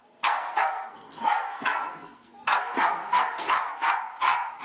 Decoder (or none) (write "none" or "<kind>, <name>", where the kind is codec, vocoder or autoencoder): codec, SNAC